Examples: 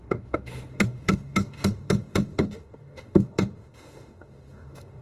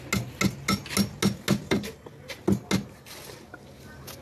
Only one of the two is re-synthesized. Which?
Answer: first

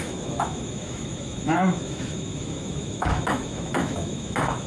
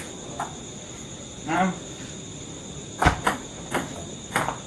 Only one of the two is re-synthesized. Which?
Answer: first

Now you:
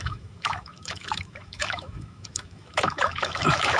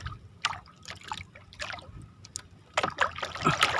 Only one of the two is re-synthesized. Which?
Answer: first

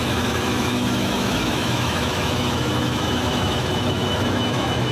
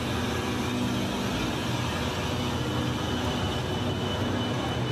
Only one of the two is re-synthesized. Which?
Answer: first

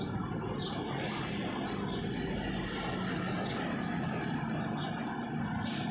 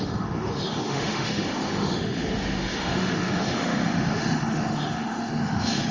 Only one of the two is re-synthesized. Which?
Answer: second